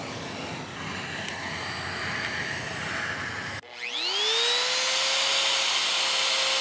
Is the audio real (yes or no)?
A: yes